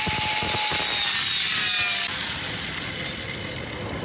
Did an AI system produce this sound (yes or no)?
no